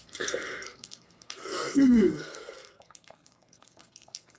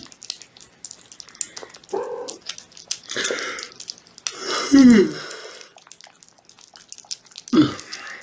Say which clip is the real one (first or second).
second